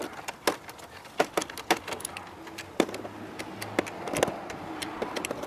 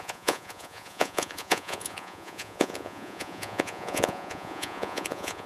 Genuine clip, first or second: first